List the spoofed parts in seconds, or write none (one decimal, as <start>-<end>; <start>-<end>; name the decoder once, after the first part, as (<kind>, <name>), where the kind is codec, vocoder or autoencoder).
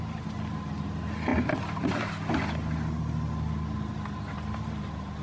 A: none